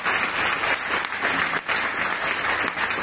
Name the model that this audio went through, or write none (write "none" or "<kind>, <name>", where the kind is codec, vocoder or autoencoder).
none